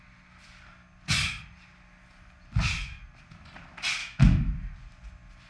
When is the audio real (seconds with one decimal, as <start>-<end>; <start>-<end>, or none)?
0.0-4.0; 4.5-5.5

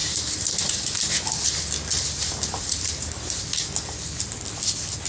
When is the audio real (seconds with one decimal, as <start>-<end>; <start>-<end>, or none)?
3.1-5.1

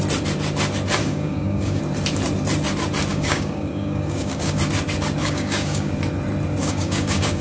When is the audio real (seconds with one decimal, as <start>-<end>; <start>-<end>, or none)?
0.0-1.0; 1.8-3.1; 4.6-5.2; 5.9-6.6

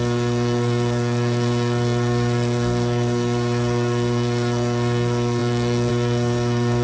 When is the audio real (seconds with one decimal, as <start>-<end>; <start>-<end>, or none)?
none

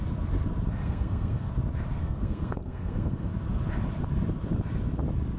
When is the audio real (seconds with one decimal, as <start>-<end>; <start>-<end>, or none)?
0.0-0.8; 1.5-2.0; 3.3-5.4